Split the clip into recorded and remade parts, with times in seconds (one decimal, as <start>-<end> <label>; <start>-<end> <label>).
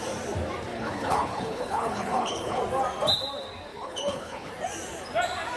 0.0-0.7 recorded; 0.7-2.6 remade; 2.6-3.7 recorded; 3.7-4.5 remade; 4.5-5.6 recorded